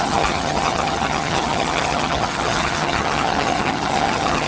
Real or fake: fake